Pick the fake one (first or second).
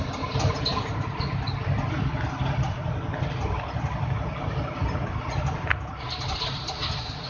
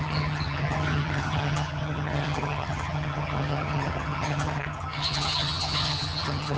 second